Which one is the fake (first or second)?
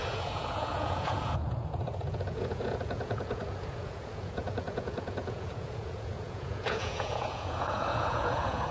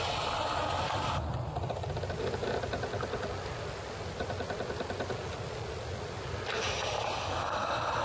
first